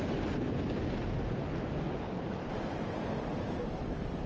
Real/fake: real